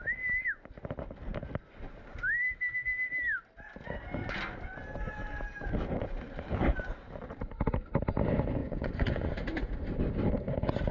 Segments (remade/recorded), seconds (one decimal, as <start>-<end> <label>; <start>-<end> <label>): 0.0-8.6 recorded; 8.6-9.3 remade; 9.3-10.9 recorded